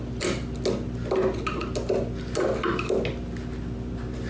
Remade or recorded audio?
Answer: recorded